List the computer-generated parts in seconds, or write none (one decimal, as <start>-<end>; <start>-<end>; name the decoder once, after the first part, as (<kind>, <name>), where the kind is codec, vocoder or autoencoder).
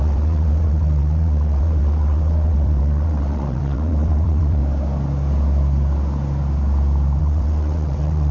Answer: 0.0-4.6 (vocoder, WaveNeXt); 7.2-8.3